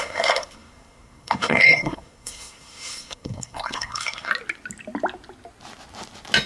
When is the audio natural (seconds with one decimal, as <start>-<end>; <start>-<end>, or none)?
4.3-6.5